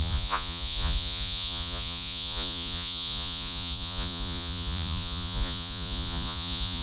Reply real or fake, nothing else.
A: fake